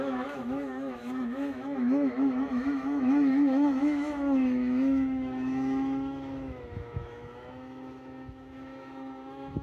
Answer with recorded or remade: remade